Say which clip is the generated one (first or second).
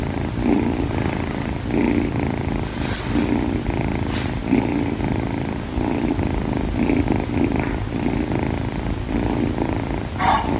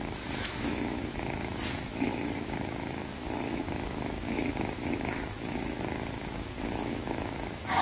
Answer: second